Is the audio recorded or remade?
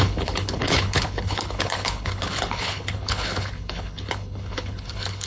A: remade